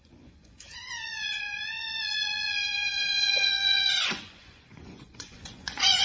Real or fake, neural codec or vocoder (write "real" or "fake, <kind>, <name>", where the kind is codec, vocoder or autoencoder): fake, vocoder, Vocos